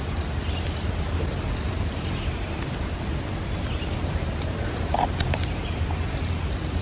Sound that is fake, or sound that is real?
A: real